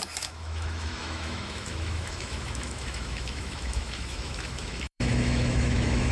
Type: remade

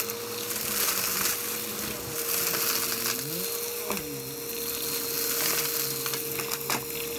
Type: recorded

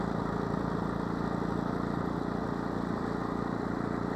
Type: recorded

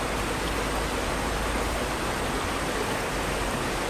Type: recorded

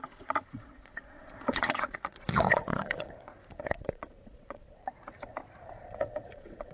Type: remade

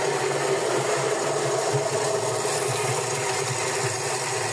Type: recorded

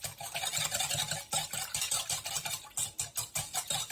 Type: recorded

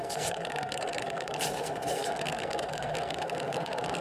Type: remade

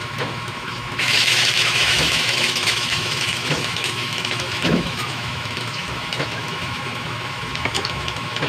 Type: remade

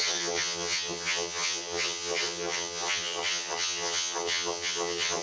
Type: remade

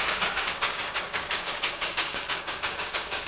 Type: remade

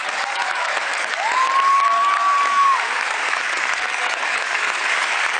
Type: remade